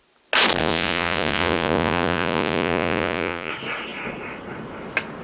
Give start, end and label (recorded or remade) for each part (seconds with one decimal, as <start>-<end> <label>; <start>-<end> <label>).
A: 0.0-0.6 recorded; 0.6-3.5 remade; 3.5-5.2 recorded